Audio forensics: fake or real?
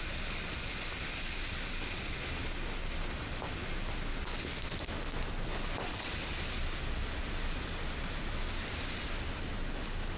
real